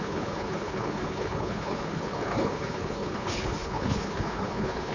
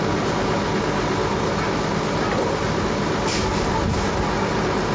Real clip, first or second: second